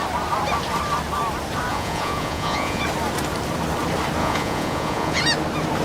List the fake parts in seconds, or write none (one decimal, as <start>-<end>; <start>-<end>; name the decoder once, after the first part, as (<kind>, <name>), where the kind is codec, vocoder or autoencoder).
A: 1.7-2.8 (vocoder, Vocos); 4.2-5.2

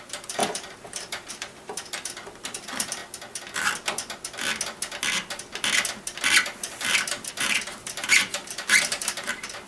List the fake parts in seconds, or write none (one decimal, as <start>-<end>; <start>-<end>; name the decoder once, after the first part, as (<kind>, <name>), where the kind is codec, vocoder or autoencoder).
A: 0.0-3.0 (vocoder, BigVGAN v2); 7.3-9.7

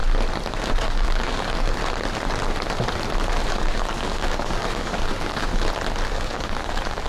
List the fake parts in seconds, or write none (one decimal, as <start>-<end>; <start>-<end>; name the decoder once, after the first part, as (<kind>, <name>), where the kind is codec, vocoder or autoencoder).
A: 0.6-1.8 (codec, DAC); 3.5-5.5; 6.1-7.1

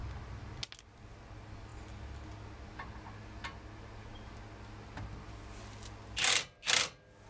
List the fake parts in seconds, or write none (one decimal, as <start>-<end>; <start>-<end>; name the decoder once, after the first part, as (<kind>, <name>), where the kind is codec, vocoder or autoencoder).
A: none

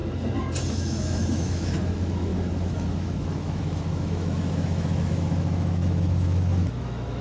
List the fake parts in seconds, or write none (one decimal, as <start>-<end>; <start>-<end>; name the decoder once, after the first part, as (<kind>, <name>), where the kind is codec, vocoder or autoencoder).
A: 0.7-7.2 (autoencoder, DAC-VAE)

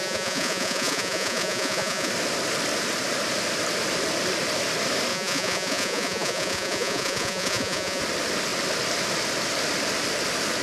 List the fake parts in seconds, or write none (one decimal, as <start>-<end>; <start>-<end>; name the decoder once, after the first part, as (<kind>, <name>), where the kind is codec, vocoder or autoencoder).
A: 0.0-2.1 (vocoder, Vocos); 5.1-8.0

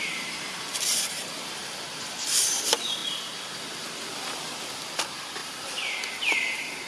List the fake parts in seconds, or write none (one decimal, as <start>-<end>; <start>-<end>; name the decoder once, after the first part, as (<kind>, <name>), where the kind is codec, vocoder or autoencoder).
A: 0.0-1.6 (vocoder, BigVGAN v2); 2.4-3.0; 4.4-6.9

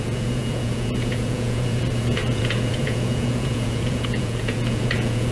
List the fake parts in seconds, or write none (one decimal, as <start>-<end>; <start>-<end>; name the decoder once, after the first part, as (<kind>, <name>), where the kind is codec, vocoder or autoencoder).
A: 0.0-5.3 (vocoder, Vocos)